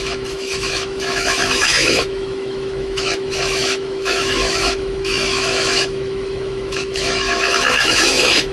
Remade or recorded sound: remade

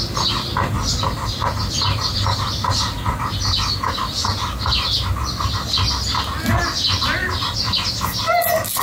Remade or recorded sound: recorded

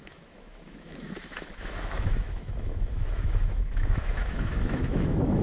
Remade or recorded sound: remade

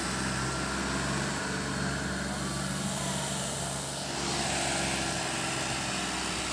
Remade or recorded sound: recorded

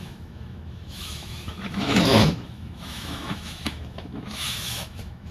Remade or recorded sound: remade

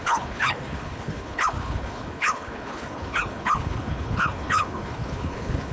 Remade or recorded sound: remade